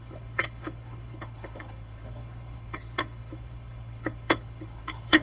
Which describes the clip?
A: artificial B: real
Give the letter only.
A